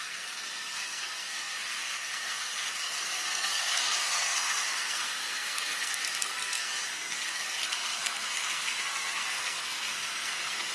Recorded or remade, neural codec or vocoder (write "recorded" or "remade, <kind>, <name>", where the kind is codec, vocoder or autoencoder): remade, codec, SNAC